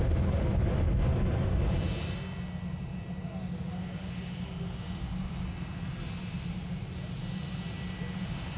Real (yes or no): yes